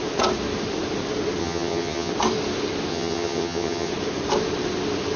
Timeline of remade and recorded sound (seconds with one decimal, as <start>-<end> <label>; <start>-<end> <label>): 0.0-1.4 recorded; 1.4-2.1 remade; 2.1-2.9 recorded; 2.9-3.9 remade; 3.9-5.2 recorded